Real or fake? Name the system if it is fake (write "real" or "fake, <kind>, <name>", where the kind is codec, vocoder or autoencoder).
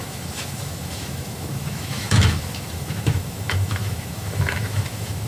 fake, autoencoder, DAC-VAE